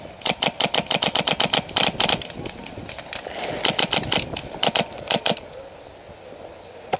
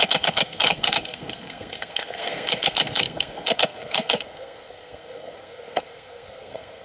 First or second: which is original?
first